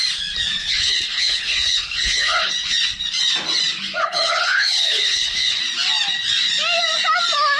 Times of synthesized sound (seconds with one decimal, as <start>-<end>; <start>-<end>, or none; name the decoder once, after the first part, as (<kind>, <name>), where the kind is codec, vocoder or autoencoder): 0.6-2.5 (codec, HILCodec); 4.0-5.6